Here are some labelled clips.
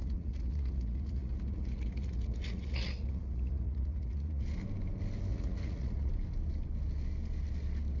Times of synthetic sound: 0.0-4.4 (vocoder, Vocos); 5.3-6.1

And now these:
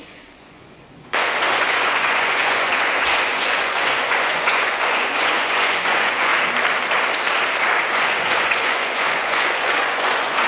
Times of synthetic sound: 0.0-6.3 (vocoder, Vocos); 7.9-10.5